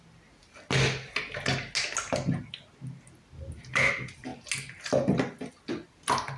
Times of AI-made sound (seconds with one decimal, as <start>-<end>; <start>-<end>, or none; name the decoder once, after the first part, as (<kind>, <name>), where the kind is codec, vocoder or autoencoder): none